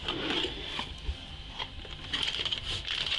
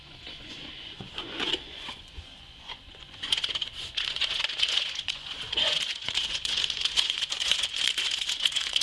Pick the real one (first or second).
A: first